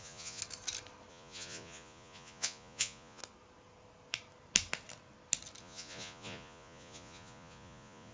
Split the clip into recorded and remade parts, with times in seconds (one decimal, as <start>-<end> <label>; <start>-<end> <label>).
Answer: 0.0-0.4 remade; 0.4-1.1 recorded; 1.1-3.2 remade; 3.2-5.6 recorded; 5.6-8.1 remade